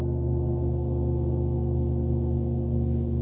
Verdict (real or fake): fake